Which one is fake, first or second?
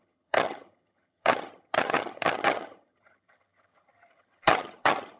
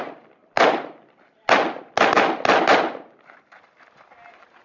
first